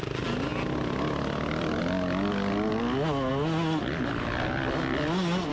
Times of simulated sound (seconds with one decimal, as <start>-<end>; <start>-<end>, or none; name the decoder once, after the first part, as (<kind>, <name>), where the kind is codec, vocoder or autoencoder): none